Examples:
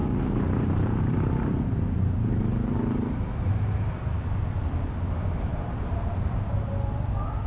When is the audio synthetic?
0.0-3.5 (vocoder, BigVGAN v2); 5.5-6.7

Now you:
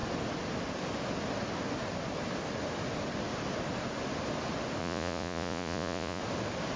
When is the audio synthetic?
4.8-6.2 (vocoder, Vocos)

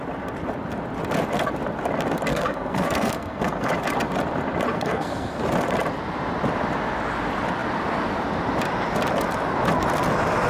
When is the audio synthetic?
2.3-3.7 (codec, SNAC); 4.7-5.4

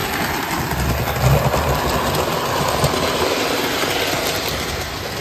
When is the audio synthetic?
none

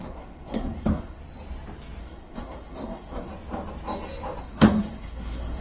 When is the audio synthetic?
0.0-1.2 (codec, SNAC); 2.0-3.3; 4.4-5.6

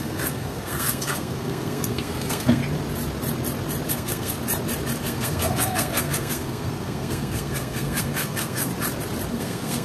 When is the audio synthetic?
0.0-2.6 (codec, SNAC); 3.9-4.4; 5.0-8.7; 9.3-9.8

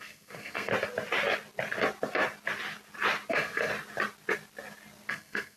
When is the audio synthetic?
0.0-0.7 (codec, SNAC); 3.3-3.7; 5.1-5.6